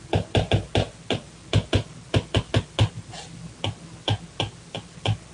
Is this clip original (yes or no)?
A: yes